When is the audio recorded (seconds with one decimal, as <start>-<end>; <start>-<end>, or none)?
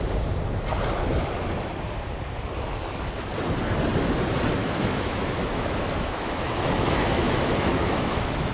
0.0-4.6